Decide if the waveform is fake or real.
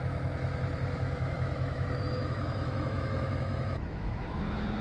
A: fake